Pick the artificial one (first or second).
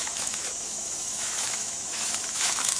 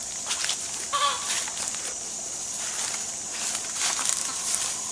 first